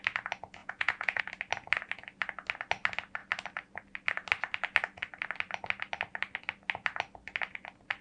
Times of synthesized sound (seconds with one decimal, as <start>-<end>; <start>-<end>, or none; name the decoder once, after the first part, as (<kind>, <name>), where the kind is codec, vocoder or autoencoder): 0.6-1.2 (vocoder, Vocos)